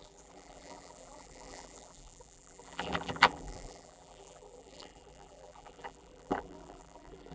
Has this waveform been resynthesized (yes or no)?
yes